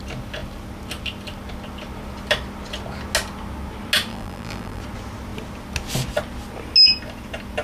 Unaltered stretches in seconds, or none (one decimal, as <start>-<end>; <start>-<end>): 0.0-4.1; 4.8-7.6

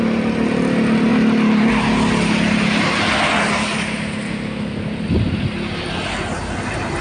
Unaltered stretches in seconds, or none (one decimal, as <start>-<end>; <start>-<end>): 0.0-1.1; 1.7-7.0